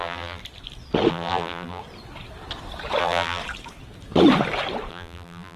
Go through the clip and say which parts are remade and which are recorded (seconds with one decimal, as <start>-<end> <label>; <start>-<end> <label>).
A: 0.0-0.4 remade; 0.4-1.1 recorded; 1.1-1.8 remade; 1.8-3.0 recorded; 3.0-3.4 remade; 3.4-4.9 recorded; 4.9-5.6 remade